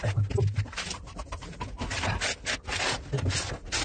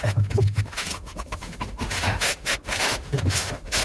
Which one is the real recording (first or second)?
first